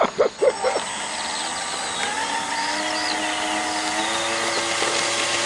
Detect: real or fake real